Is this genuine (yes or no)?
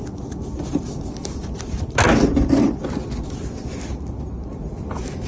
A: yes